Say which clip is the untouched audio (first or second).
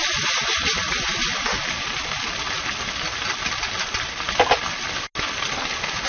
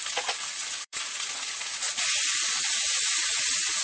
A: first